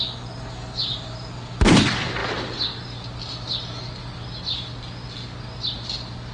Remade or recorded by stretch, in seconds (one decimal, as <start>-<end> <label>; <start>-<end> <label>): 0.0-6.3 recorded